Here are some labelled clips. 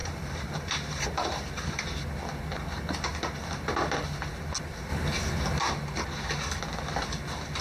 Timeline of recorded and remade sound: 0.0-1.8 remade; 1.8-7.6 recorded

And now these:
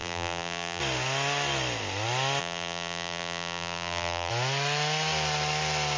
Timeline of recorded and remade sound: 0.0-0.8 remade; 0.8-2.4 recorded; 2.4-4.3 remade; 4.3-6.0 recorded

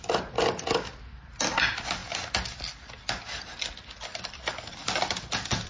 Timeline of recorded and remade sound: 0.0-5.7 recorded

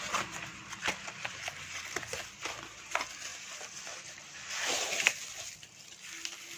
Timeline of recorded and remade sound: 0.0-0.5 recorded; 0.5-2.8 remade; 2.8-3.3 recorded; 3.3-5.0 remade; 5.0-6.6 recorded

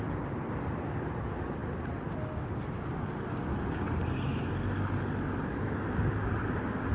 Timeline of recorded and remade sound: 0.0-6.9 recorded

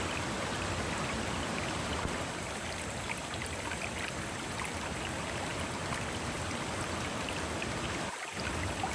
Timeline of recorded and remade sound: 0.0-8.9 recorded

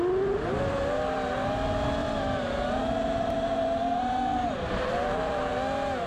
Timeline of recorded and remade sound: 0.0-2.0 recorded; 2.0-5.5 remade; 5.5-6.1 recorded

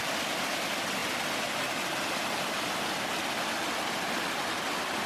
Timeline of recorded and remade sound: 0.0-5.1 recorded